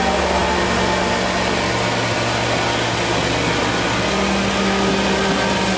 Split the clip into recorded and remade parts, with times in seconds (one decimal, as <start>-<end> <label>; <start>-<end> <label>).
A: 0.0-5.8 recorded

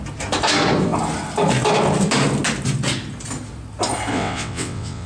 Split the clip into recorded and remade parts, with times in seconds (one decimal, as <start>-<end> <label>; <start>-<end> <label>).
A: 0.0-4.1 recorded; 4.1-5.1 remade

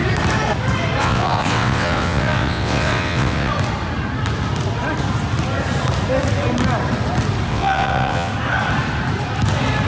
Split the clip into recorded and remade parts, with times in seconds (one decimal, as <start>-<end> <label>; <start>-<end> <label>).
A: 0.0-1.0 recorded; 1.0-3.5 remade; 3.5-7.5 recorded; 7.5-8.3 remade; 8.3-9.9 recorded

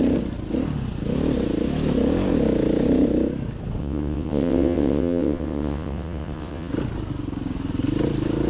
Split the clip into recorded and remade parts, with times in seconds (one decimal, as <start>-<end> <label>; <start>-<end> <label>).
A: 0.0-3.8 recorded; 3.8-6.7 remade; 6.7-8.5 recorded

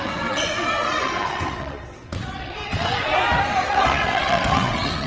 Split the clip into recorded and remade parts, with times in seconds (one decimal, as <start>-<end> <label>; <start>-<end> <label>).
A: 0.0-3.1 remade; 3.1-3.6 recorded; 3.6-5.1 remade

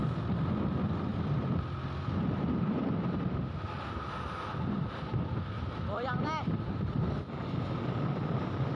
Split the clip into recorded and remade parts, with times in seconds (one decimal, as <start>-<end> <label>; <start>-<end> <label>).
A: 0.0-8.7 recorded